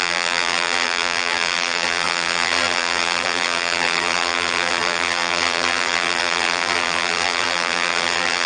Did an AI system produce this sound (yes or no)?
yes